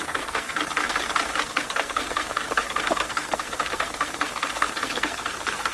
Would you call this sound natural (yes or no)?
no